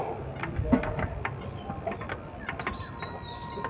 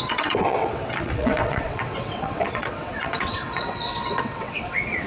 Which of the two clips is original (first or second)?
first